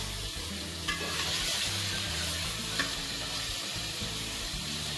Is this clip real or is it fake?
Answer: fake